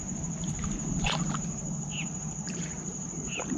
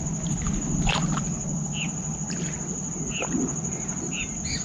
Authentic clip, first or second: second